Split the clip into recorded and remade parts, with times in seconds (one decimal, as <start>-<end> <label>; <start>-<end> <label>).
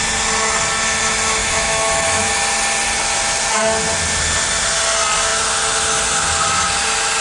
0.0-1.4 recorded; 1.4-2.3 remade; 2.3-7.2 recorded